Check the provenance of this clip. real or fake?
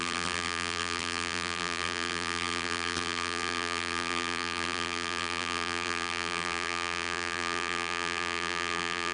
fake